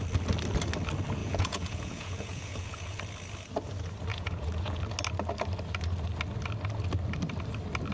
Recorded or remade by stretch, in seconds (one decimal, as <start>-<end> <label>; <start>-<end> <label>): 0.0-1.2 recorded; 1.2-3.0 remade; 3.0-4.1 recorded; 4.1-4.8 remade; 4.8-7.9 recorded